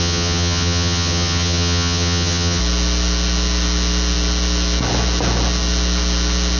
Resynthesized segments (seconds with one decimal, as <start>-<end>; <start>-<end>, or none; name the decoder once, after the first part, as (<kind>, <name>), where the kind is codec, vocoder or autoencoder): 0.0-2.6 (vocoder, HiFi-GAN)